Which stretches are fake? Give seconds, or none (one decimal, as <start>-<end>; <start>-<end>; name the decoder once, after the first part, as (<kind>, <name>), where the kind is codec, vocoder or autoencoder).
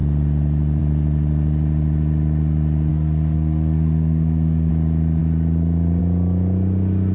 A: 2.9-4.7 (codec, SNAC)